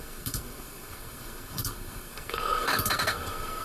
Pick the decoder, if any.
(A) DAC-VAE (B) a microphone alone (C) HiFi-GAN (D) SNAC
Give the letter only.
D